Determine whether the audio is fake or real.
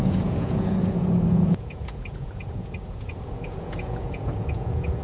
fake